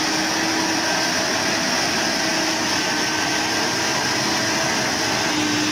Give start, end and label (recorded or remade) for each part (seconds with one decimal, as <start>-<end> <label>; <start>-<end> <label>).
0.0-5.7 recorded